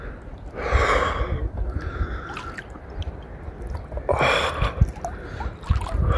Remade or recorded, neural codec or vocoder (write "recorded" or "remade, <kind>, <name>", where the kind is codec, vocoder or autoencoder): recorded